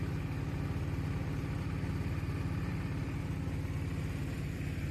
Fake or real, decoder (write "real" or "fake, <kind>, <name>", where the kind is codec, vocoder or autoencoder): real